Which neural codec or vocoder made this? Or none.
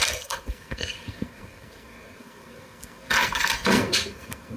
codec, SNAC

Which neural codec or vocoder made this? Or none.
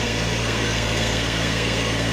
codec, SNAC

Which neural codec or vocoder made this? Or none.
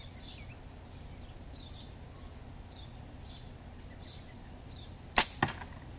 none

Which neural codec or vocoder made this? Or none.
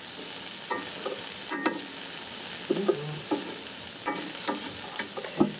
none